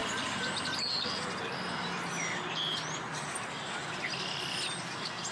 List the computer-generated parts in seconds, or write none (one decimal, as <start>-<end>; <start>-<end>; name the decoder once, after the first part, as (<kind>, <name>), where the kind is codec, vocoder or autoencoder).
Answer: none